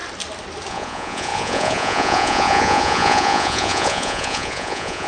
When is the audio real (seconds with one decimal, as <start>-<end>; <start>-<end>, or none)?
0.0-0.7